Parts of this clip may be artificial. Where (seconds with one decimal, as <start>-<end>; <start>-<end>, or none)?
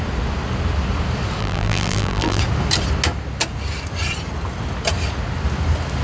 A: 1.4-2.4